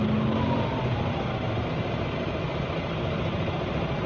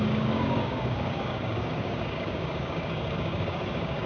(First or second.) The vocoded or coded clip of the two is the second